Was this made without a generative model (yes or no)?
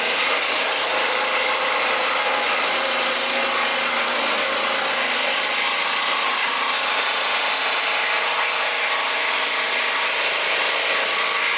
yes